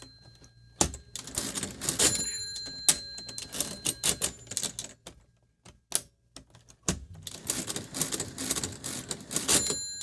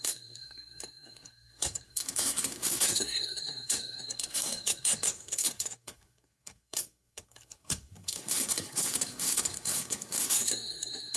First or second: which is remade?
second